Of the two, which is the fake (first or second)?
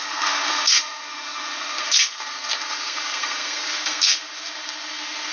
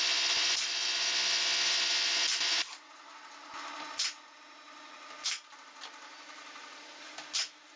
first